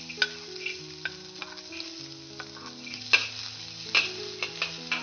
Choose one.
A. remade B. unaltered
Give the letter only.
B